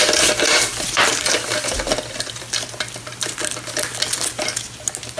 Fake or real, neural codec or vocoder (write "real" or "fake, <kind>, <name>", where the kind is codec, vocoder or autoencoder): real